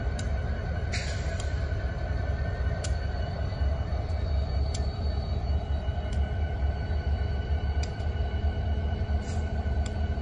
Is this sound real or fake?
fake